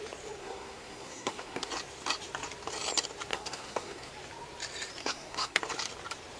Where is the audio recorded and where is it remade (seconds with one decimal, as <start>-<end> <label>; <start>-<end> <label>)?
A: 0.0-0.4 recorded; 0.4-1.7 remade; 1.7-3.3 recorded; 3.3-4.1 remade; 4.1-5.0 recorded; 5.0-5.6 remade; 5.6-6.4 recorded